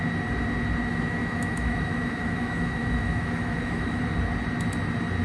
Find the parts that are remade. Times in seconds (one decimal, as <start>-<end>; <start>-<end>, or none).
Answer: 0.9-4.0